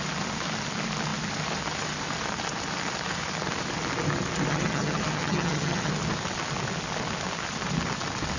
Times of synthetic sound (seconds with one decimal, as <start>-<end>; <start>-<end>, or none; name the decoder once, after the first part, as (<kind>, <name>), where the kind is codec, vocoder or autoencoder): 4.5-5.9 (vocoder, HiFi-GAN)